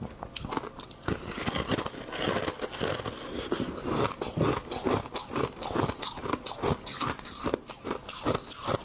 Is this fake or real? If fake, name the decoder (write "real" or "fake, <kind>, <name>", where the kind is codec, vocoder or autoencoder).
real